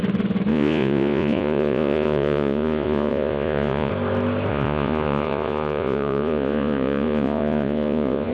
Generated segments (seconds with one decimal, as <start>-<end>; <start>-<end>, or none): 0.5-3.9; 4.5-8.3